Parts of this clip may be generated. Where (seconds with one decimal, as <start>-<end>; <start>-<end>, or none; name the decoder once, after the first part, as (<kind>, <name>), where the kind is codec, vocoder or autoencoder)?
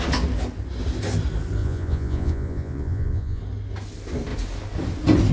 1.6-3.4 (vocoder, Vocos)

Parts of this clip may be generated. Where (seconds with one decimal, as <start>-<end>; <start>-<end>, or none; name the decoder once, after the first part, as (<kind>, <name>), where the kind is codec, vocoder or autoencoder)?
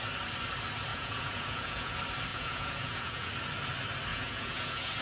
0.9-1.9 (vocoder, Vocos); 2.3-3.3; 4.1-5.0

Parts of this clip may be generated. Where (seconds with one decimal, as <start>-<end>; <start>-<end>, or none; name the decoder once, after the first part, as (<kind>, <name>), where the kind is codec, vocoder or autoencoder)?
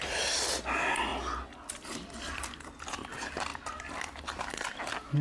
none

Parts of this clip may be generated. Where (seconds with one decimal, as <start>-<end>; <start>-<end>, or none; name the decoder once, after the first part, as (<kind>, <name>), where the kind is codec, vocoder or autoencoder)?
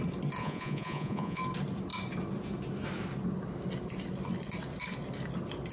0.4-1.4 (vocoder, Vocos)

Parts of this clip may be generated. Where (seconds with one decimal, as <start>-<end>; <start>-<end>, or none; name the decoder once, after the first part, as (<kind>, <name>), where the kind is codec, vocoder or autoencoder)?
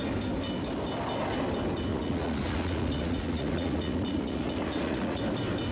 1.9-5.2 (vocoder, Vocos)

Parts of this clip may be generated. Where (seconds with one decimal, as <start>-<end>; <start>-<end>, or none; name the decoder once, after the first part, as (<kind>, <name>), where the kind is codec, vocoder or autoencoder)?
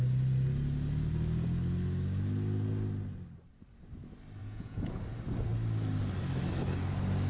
4.4-5.0 (vocoder, Vocos)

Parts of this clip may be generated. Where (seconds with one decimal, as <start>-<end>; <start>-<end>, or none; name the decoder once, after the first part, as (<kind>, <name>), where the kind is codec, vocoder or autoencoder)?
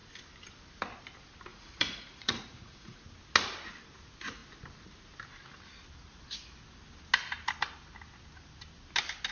1.5-3.0 (vocoder, Vocos)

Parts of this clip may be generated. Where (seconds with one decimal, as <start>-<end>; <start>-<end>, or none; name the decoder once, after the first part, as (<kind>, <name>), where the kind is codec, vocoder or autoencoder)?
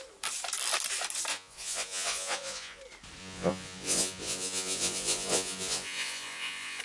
1.3-2.8 (vocoder, Vocos); 3.2-6.8